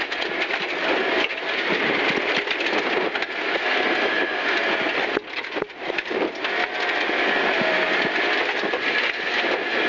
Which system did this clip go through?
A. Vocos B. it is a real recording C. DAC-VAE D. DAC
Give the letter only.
B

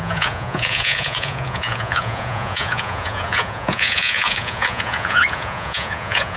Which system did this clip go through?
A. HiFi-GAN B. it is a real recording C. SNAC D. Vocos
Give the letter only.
D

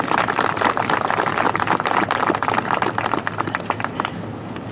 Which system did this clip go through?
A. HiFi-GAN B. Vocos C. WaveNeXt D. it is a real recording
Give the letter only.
D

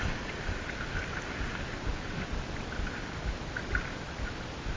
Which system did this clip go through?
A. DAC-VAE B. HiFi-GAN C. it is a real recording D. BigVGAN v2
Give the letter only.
C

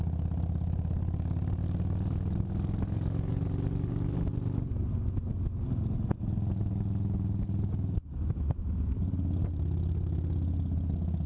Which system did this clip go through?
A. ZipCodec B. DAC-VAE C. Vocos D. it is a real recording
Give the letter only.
D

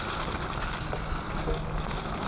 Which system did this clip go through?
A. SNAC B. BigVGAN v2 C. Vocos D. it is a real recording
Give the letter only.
D